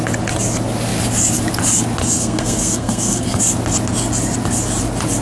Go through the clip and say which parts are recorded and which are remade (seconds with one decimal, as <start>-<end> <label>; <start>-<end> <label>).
0.0-2.0 recorded; 2.0-3.4 remade; 3.4-5.2 recorded